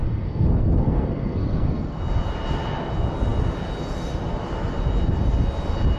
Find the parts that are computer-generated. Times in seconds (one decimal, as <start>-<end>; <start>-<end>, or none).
0.0-2.0